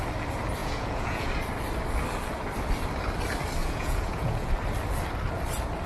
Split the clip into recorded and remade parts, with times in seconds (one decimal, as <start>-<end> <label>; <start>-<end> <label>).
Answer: 0.0-0.6 recorded; 0.6-1.3 remade; 1.3-3.6 recorded; 3.6-4.5 remade; 4.5-5.9 recorded